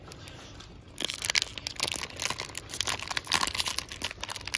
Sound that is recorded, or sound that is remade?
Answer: recorded